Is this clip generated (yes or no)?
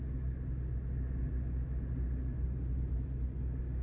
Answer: no